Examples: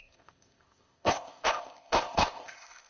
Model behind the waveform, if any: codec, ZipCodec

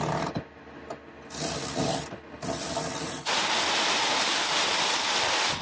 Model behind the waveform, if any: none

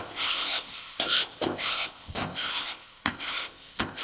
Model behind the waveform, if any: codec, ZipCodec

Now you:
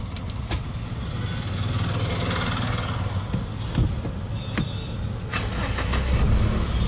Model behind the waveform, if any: none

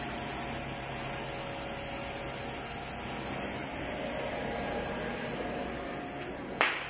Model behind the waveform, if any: none